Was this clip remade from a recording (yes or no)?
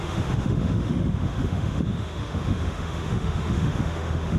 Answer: yes